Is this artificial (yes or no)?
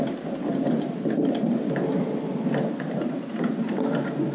no